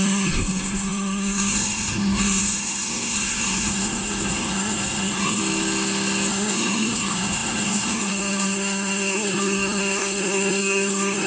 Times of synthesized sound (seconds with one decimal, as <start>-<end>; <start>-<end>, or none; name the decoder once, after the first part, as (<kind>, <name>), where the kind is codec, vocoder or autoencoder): 0.0-5.4 (codec, SNAC); 6.3-11.3